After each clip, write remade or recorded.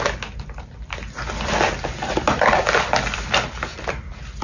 recorded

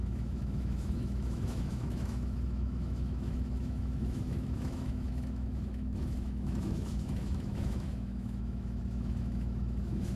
remade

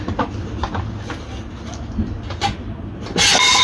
recorded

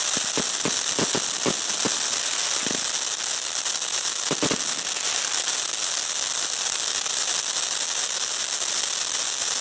recorded